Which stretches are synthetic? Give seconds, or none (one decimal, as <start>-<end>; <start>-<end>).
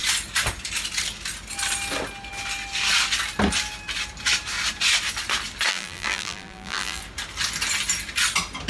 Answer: 5.7-7.0